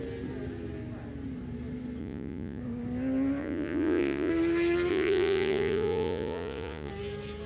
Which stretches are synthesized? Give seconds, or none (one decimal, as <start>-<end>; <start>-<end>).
2.0-2.6; 3.4-4.3; 4.9-6.9